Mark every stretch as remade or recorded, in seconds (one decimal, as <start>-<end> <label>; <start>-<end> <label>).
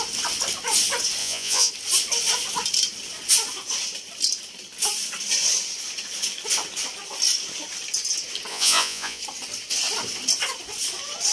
0.0-1.2 recorded; 1.2-1.7 remade; 1.7-8.5 recorded; 8.5-9.2 remade; 9.2-11.3 recorded